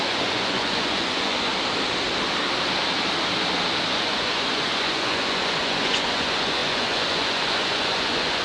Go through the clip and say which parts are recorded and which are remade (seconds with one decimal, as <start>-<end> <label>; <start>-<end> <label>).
0.0-1.5 remade; 1.5-3.9 recorded; 3.9-8.4 remade